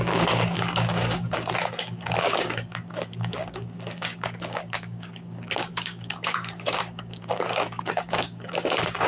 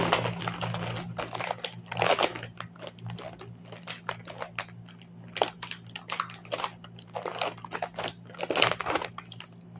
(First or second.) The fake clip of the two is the first